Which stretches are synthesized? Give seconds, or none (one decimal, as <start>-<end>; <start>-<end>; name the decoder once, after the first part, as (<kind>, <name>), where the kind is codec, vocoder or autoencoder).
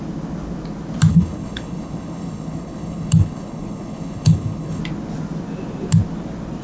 1.1-4.8 (codec, HILCodec)